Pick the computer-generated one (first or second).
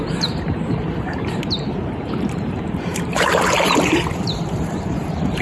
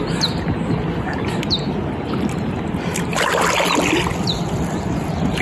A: first